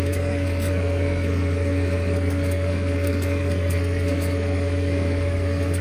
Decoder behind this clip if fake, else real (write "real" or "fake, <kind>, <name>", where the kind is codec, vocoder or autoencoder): fake, codec, SNAC